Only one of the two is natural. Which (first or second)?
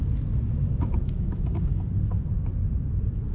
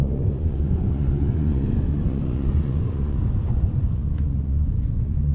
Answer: first